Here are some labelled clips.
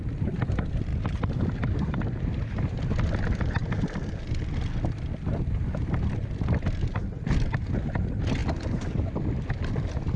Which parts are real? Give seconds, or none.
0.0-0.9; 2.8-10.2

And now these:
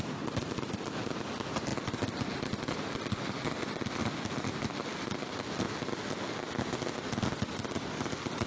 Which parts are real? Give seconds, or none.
0.0-8.5

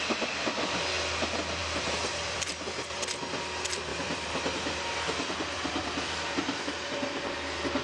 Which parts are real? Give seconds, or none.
0.0-1.6; 2.5-3.9; 6.6-7.8

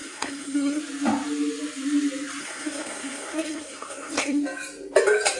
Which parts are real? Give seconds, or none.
0.8-2.4; 4.4-5.4

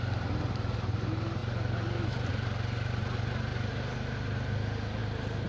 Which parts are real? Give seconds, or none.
0.0-5.0

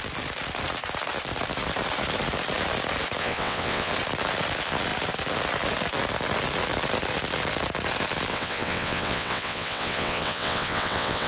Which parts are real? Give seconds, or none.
0.0-3.2; 3.9-8.3

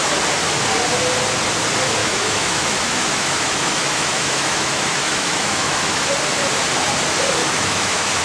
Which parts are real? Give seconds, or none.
0.0-2.0; 6.0-7.4

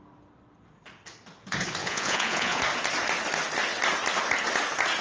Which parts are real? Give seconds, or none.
0.0-1.8; 2.6-5.0